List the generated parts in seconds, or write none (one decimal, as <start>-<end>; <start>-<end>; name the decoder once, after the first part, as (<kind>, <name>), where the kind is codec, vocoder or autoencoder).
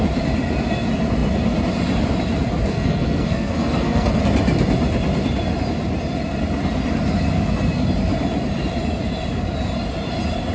2.7-4.2 (codec, SNAC)